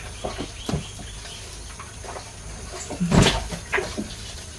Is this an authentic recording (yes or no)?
yes